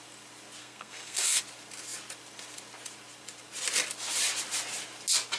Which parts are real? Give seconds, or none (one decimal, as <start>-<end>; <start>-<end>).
0.0-0.6; 1.4-5.4